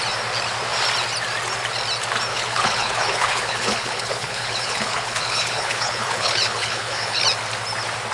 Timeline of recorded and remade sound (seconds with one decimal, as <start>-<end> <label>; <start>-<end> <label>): 0.0-2.3 recorded; 2.3-7.2 remade; 7.2-8.1 recorded